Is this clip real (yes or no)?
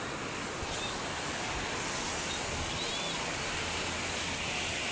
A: yes